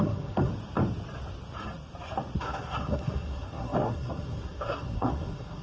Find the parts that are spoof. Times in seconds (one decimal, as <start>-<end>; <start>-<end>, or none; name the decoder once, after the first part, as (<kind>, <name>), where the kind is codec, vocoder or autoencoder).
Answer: 0.0-0.5 (codec, SNAC); 2.4-5.6